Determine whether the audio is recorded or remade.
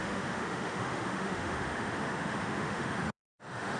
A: remade